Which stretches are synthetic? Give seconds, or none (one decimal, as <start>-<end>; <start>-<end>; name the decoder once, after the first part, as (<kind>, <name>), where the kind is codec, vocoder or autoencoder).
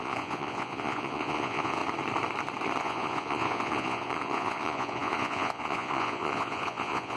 0.0-1.8 (vocoder, Vocos); 2.8-7.2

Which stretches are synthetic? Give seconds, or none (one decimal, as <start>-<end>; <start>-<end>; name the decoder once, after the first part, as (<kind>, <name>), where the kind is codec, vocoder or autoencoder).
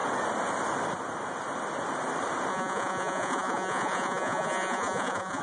2.5-5.4 (vocoder, Vocos)